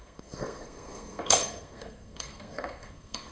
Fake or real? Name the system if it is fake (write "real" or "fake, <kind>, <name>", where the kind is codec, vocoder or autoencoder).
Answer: fake, codec, SNAC